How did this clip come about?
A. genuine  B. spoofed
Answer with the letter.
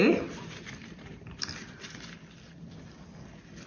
B